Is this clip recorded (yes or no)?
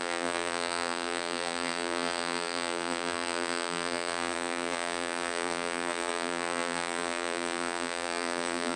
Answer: no